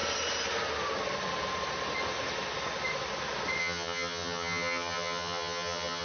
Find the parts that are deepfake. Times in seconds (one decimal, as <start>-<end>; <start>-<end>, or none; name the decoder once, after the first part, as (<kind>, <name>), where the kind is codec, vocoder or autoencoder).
3.6-6.0 (vocoder, HiFi-GAN)